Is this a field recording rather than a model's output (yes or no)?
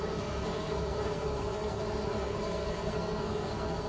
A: no